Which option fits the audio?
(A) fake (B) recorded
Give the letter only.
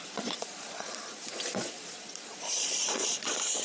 A